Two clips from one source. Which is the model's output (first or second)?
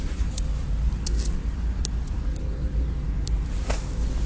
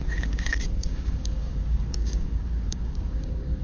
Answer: second